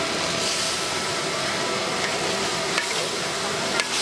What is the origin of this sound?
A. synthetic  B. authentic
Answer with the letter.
B